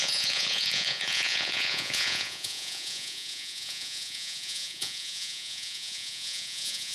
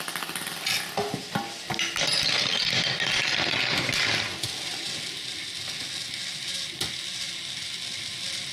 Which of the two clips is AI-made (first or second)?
first